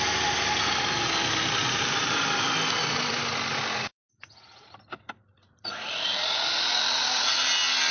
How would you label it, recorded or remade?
remade